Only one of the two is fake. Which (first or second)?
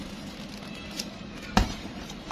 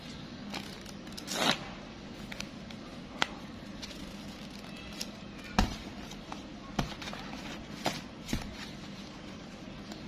first